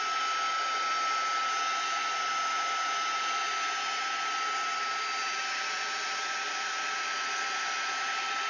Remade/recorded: recorded